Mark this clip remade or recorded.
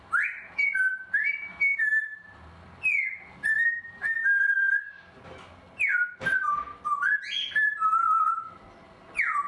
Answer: recorded